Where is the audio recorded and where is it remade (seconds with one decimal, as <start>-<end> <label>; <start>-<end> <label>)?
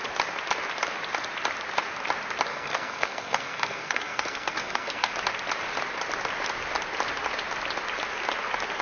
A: 0.0-2.5 recorded; 2.5-5.1 remade; 5.1-8.8 recorded